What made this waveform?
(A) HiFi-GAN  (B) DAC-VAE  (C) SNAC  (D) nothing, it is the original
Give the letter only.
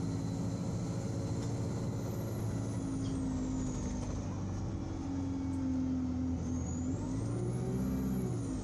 D